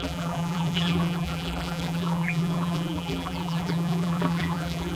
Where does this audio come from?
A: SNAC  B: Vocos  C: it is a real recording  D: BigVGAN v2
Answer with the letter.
D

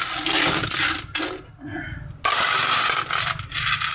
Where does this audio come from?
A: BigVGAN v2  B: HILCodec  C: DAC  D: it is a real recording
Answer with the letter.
D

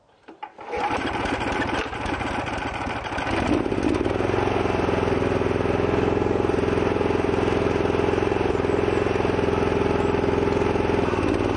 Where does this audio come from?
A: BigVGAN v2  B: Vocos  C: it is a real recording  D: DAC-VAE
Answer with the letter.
C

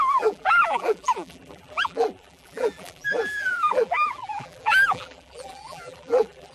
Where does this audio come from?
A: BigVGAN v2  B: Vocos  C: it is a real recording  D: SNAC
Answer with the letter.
A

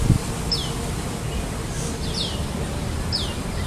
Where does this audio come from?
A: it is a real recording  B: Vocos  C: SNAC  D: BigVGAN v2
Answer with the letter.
A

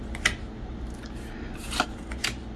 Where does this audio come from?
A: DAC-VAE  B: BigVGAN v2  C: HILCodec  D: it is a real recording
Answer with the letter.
D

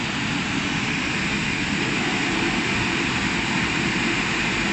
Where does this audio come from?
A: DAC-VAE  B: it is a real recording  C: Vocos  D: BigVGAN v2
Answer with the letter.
B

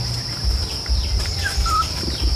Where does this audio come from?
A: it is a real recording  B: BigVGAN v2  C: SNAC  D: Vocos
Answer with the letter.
B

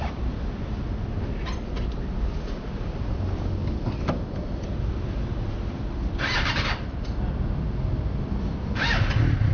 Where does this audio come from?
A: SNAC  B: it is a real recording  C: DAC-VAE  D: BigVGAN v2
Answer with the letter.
D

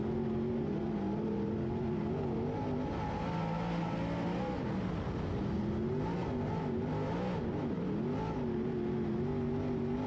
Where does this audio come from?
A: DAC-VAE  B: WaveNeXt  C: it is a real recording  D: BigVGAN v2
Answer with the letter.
C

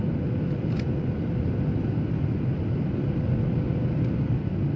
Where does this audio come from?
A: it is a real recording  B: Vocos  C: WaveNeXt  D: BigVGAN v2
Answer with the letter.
A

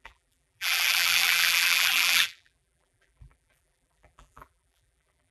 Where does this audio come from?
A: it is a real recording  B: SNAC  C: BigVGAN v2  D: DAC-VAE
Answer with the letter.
C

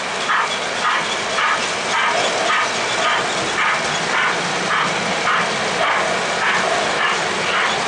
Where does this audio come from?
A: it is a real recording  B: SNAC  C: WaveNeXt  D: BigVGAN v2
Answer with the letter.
A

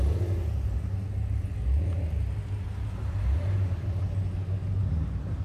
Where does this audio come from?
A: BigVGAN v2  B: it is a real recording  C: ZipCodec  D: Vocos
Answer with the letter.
B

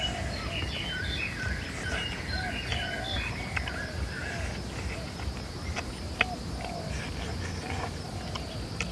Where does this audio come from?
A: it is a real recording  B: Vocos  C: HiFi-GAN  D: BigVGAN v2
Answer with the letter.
A